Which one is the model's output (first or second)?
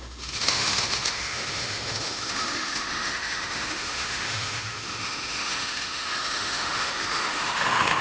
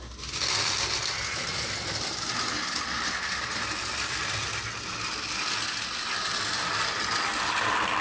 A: first